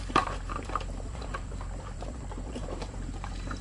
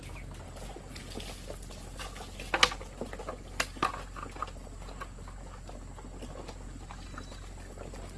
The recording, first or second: second